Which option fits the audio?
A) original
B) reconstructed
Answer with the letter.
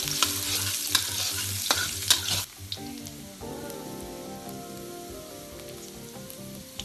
A